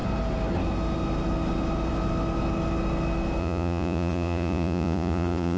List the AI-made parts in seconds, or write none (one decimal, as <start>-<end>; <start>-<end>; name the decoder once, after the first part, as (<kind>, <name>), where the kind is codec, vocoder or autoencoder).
3.4-5.6 (vocoder, Vocos)